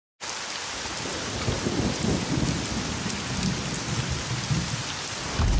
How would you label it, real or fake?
real